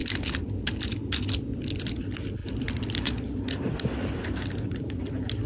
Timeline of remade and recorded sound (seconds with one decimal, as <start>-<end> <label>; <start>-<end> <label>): 0.0-2.4 recorded; 2.4-5.1 remade; 5.1-5.5 recorded